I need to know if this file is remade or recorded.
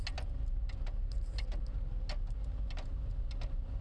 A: recorded